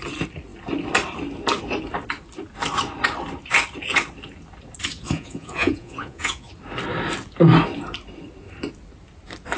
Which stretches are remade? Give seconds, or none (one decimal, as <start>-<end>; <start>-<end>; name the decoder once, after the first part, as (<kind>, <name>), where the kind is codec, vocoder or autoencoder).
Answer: 4.8-6.5 (vocoder, Vocos)